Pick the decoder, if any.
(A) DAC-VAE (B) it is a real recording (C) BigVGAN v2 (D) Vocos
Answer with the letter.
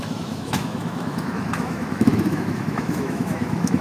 A